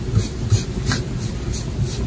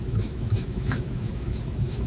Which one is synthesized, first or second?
second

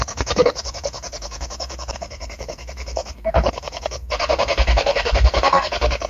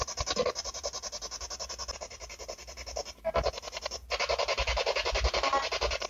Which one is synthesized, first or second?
first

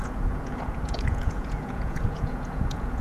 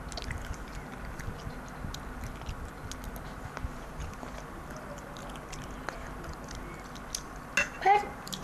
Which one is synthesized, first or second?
first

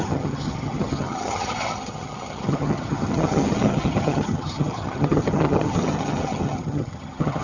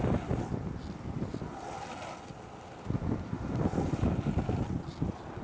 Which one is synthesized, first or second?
first